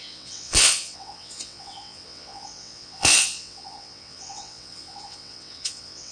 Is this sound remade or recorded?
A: remade